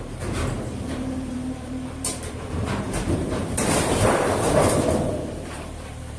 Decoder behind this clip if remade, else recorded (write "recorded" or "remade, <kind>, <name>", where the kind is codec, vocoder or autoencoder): remade, vocoder, BigVGAN v2